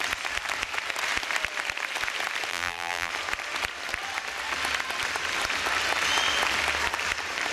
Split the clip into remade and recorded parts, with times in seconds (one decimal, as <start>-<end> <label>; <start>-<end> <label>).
0.0-2.5 recorded; 2.5-3.1 remade; 3.1-7.5 recorded